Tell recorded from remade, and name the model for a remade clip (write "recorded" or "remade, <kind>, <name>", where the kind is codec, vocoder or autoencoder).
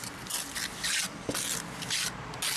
recorded